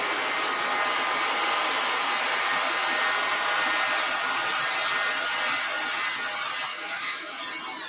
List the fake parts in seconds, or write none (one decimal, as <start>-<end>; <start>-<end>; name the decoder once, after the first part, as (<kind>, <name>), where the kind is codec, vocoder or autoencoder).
6.7-7.4 (autoencoder, DAC-VAE)